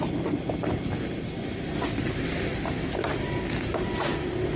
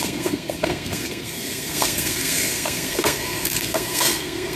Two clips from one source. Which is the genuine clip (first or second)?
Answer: first